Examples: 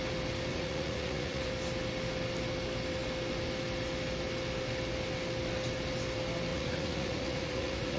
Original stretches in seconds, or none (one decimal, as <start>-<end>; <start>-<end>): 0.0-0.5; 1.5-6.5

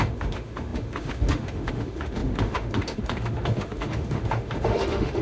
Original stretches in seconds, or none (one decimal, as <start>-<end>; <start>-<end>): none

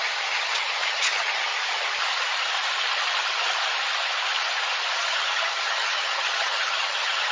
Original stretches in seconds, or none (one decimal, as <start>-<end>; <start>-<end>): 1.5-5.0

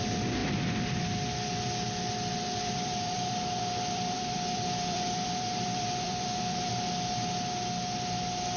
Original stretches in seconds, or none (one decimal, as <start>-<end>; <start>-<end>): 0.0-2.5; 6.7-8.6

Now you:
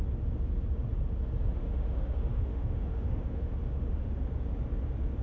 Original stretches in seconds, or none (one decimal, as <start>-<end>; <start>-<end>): 0.0-1.6; 4.2-5.2

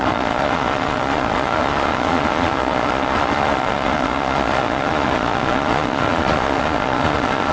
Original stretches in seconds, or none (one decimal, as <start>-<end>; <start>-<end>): none

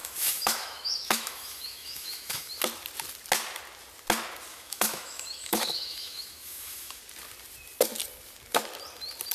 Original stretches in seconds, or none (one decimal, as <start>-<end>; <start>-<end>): 2.5-4.5; 7.0-9.3

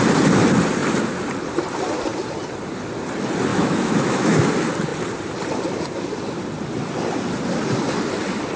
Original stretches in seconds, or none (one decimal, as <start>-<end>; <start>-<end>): 0.0-3.5; 4.5-8.6